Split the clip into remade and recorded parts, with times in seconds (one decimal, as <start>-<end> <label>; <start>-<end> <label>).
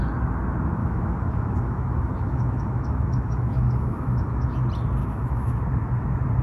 0.0-0.8 recorded; 0.8-4.6 remade; 4.6-5.0 recorded; 5.0-5.6 remade; 5.6-6.4 recorded